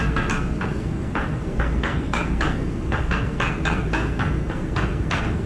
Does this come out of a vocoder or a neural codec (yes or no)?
yes